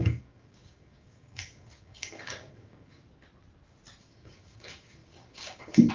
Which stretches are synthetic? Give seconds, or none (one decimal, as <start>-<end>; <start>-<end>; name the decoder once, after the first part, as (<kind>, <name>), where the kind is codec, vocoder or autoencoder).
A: 0.0-3.0 (codec, DAC); 4.0-5.9